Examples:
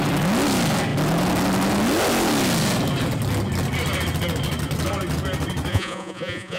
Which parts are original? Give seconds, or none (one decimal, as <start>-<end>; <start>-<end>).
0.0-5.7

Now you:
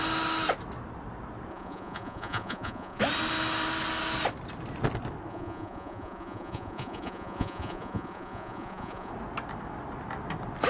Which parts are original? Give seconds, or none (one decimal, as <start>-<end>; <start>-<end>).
0.0-1.5; 3.0-5.3; 9.1-10.7

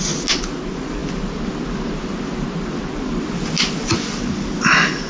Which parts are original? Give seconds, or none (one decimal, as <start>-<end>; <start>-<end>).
0.0-5.1

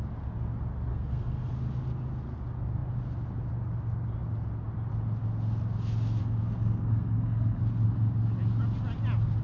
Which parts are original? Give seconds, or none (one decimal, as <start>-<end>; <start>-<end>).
0.0-0.9; 1.5-6.2; 7.6-9.4

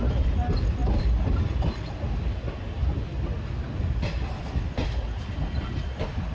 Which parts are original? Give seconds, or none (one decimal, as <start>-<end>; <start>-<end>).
0.0-6.3